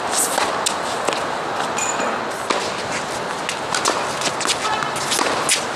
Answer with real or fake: real